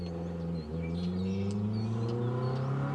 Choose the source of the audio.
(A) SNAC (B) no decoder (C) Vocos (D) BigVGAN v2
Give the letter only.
B